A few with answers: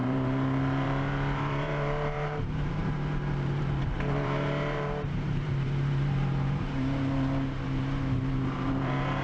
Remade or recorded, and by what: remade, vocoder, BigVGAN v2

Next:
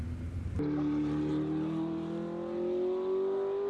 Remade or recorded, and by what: recorded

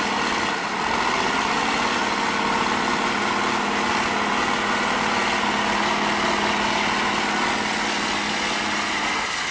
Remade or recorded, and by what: recorded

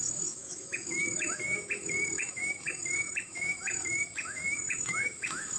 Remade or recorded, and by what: remade, autoencoder, DAC-VAE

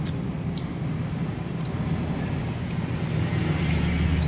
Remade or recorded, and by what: recorded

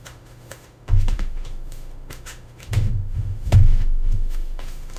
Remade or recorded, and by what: remade, autoencoder, DAC-VAE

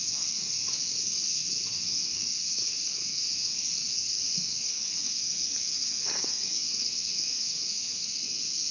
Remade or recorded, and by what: remade, codec, SNAC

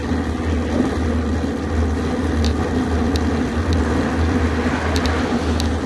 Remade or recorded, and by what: recorded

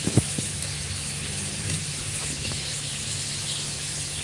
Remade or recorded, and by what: remade, autoencoder, DAC-VAE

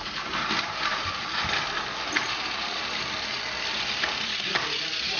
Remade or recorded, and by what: recorded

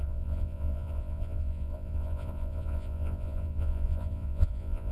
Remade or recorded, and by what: remade, vocoder, Vocos